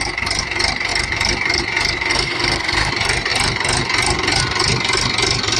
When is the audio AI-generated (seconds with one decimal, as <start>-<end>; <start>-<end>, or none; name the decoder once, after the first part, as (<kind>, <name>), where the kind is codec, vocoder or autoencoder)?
2.1-2.9 (codec, SNAC)